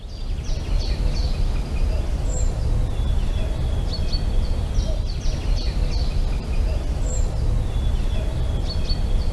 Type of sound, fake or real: real